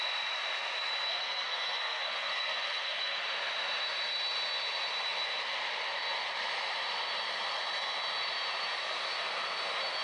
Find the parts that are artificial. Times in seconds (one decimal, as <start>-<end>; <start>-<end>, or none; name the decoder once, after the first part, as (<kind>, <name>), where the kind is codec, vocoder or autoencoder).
1.1-3.2 (codec, SNAC)

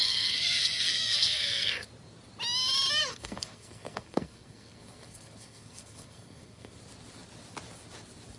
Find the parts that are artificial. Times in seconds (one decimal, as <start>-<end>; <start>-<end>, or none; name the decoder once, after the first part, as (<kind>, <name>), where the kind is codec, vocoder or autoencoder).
0.0-1.9 (codec, SNAC); 3.0-6.7

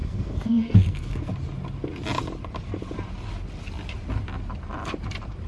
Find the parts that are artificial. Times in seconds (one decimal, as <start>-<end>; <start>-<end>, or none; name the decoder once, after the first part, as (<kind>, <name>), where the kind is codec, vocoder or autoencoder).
0.0-1.3 (codec, SNAC)

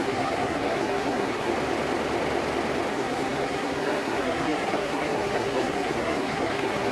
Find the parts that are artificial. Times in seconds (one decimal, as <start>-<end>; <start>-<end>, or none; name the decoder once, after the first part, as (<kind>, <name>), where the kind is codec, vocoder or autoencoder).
0.0-1.5 (codec, SNAC); 2.9-6.9